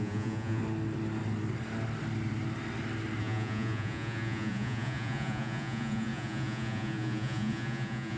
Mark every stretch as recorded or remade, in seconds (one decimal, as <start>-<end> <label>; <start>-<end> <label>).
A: 0.0-0.6 remade; 0.6-3.2 recorded; 3.2-8.2 remade